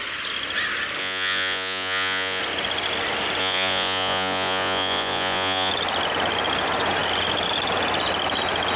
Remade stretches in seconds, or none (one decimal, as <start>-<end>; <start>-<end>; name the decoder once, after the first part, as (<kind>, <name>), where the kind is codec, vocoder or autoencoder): 1.0-2.4 (vocoder, Vocos); 3.4-5.7